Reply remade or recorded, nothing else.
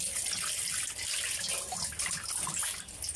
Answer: recorded